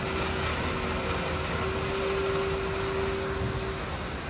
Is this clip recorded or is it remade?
recorded